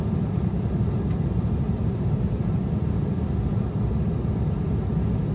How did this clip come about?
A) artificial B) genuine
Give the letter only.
B